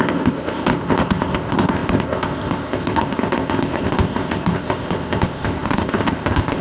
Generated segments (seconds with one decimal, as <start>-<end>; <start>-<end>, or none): 0.0-6.6

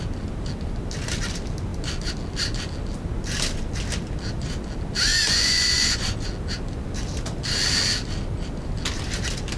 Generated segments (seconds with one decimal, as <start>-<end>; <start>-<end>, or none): 5.1-6.1

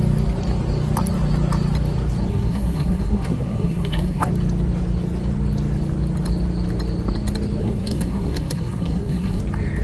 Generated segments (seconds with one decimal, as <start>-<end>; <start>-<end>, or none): 2.3-4.3; 7.6-9.4